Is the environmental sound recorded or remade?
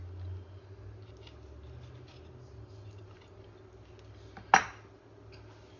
recorded